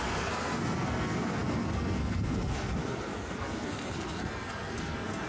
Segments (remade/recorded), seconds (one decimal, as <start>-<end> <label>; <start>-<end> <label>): 0.0-5.3 remade